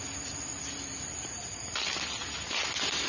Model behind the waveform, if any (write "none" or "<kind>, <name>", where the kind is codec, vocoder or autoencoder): none